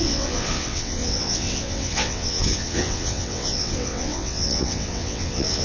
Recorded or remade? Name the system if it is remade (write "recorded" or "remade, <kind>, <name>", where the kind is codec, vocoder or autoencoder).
remade, vocoder, WaveNeXt